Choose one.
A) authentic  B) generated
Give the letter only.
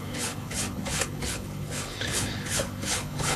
B